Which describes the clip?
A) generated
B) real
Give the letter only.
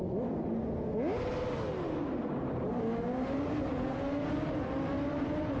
B